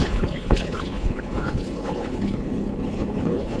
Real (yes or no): no